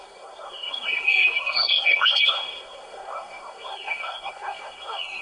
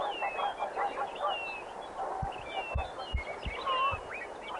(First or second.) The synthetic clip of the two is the first